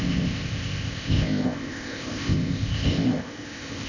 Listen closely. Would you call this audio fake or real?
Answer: fake